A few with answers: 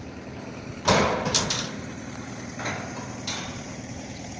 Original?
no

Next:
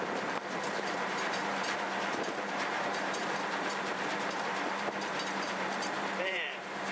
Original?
no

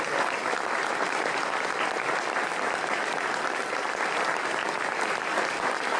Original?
no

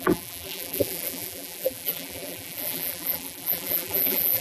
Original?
no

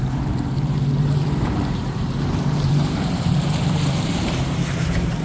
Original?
no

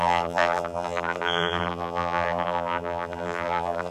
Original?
no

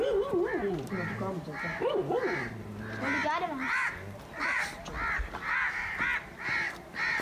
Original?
yes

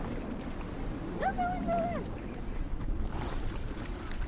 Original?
no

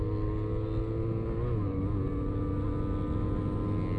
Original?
yes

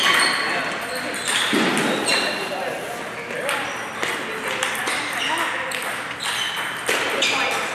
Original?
yes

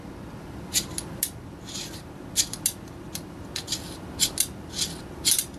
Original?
yes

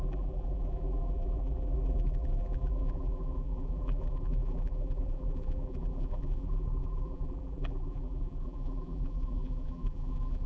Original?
no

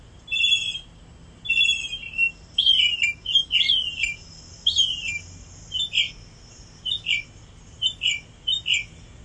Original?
yes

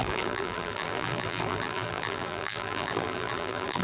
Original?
no